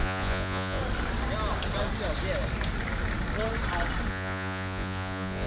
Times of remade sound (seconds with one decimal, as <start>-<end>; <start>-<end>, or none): 0.0-0.8; 4.1-5.5